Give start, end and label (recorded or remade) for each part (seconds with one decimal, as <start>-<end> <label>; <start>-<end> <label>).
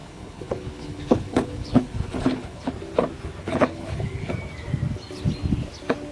0.0-2.7 remade; 2.7-3.4 recorded; 3.4-4.3 remade; 4.3-6.1 recorded